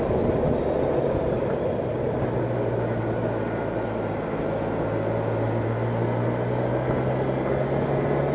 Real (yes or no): yes